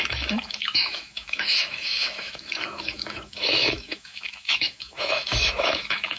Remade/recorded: remade